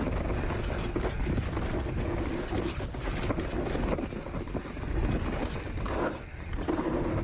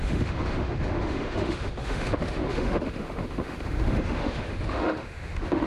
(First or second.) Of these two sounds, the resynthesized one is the second